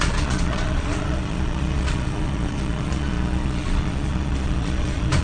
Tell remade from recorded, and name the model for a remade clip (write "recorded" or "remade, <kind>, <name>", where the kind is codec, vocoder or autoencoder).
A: remade, vocoder, Vocos